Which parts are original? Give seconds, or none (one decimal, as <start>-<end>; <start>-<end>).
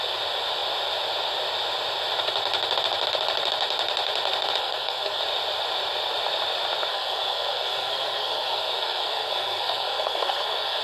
0.0-4.6; 5.2-6.9